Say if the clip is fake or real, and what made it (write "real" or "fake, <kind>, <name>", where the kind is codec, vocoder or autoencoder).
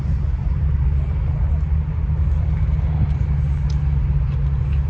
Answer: real